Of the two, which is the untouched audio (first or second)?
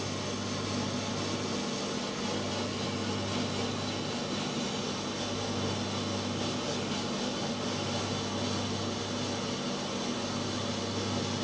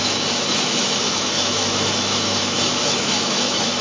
first